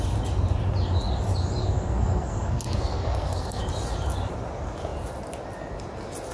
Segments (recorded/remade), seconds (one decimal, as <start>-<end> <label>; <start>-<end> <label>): 0.0-1.6 recorded; 1.6-3.6 remade; 3.6-6.3 recorded